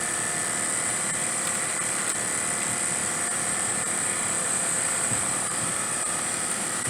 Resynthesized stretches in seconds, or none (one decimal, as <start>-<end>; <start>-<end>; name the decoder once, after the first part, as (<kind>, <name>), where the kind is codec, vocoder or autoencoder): 0.9-1.7 (vocoder, BigVGAN v2); 3.0-6.9